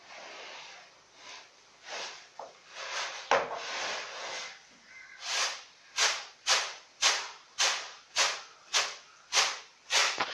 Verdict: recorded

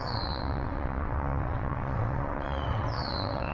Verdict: remade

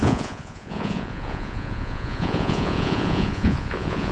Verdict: remade